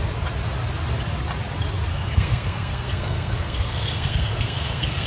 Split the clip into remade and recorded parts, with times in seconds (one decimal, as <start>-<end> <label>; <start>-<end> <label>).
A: 0.0-1.9 recorded; 1.9-5.1 remade